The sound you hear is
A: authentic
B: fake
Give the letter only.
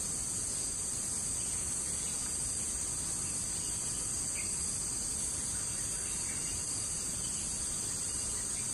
A